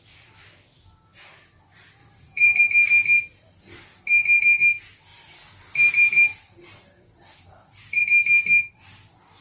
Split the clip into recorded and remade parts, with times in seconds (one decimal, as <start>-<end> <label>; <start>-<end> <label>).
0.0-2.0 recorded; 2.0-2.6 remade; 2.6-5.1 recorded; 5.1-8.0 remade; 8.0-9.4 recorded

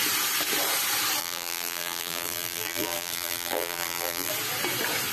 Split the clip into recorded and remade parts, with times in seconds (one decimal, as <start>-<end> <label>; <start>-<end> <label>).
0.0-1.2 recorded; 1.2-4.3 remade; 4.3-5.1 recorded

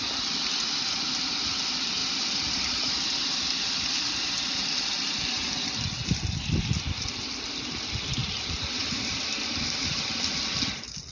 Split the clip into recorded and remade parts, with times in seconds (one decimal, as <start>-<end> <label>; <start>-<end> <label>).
0.0-2.0 recorded; 2.0-2.9 remade; 2.9-8.2 recorded; 8.2-10.3 remade; 10.3-11.1 recorded